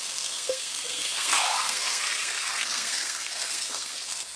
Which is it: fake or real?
fake